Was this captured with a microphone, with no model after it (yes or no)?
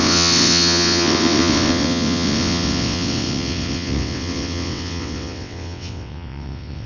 no